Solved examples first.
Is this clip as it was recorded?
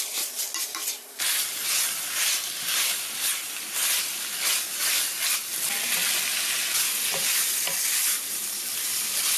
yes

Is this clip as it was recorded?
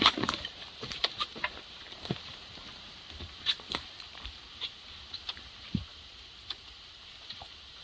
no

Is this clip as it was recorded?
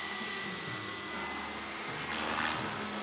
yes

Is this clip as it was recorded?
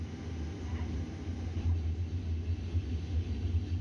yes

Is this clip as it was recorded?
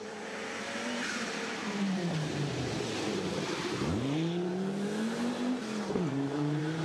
no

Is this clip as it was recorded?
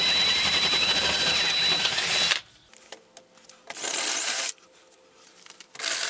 yes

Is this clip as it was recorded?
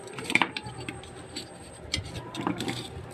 no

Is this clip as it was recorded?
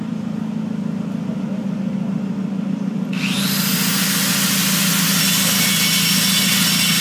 yes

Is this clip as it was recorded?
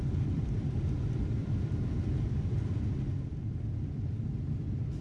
no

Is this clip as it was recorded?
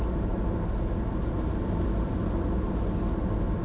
yes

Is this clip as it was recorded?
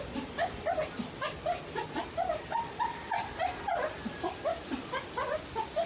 yes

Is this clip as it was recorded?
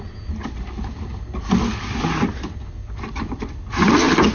yes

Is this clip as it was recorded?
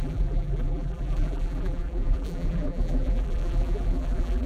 no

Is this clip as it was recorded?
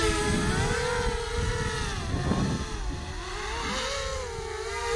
yes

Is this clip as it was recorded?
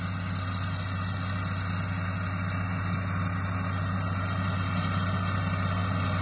yes